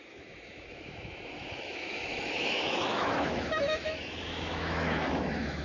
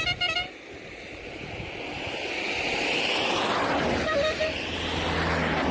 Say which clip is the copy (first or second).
first